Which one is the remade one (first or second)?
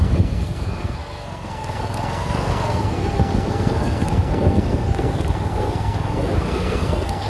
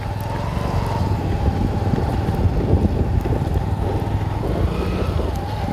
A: first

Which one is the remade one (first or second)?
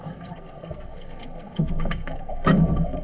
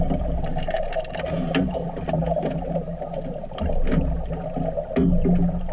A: first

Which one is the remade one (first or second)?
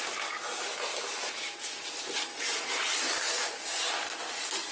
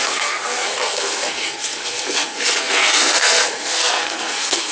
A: second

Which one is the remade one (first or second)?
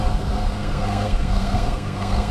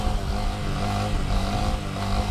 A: first